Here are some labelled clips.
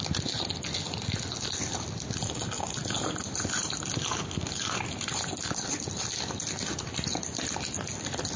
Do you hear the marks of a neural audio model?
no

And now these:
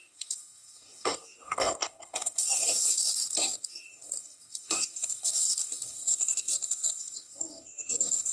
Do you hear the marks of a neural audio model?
yes